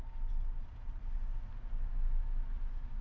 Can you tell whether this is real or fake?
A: real